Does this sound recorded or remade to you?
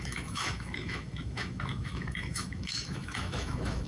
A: remade